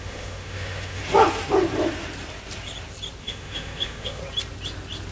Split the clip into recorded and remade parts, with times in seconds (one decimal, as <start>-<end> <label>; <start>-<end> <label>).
0.0-1.0 remade; 1.0-3.2 recorded; 3.2-4.2 remade; 4.2-5.1 recorded